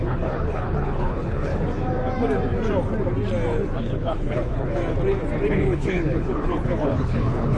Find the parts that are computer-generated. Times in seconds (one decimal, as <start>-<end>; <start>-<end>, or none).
0.0-1.5; 3.8-4.8; 5.5-7.6